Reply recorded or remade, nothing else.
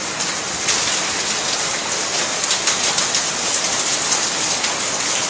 recorded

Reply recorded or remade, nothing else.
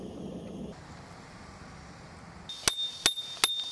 recorded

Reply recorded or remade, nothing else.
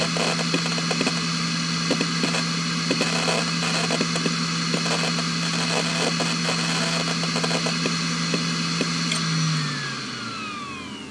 recorded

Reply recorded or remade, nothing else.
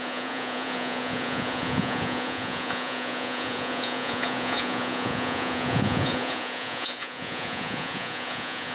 remade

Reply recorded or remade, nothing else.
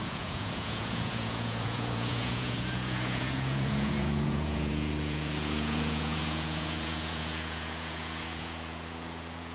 remade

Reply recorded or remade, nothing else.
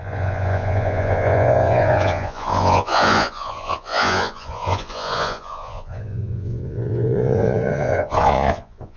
remade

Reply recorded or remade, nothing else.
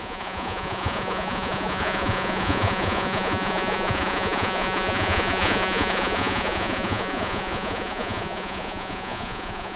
remade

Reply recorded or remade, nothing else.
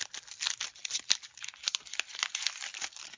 recorded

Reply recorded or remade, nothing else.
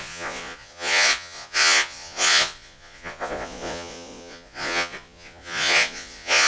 remade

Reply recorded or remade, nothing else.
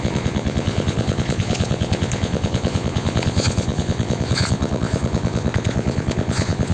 remade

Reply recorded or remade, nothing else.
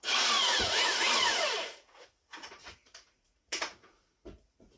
remade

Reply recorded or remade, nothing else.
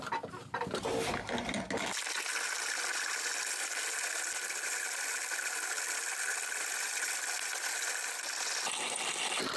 recorded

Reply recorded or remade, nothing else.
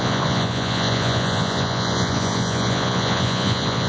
remade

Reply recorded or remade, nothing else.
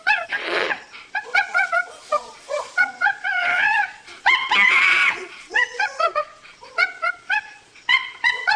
remade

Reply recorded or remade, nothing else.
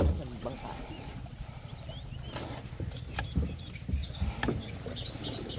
recorded